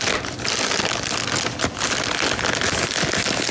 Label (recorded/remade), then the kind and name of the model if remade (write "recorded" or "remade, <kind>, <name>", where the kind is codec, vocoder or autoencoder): recorded